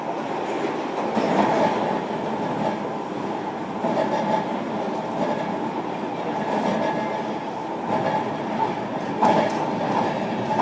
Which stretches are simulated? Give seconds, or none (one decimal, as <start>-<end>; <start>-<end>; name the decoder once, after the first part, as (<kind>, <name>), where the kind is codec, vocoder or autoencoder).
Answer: none